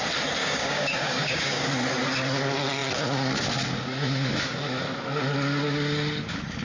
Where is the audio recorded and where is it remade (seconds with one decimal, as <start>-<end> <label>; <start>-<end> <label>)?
0.0-0.4 recorded; 0.4-1.7 remade; 1.7-6.6 recorded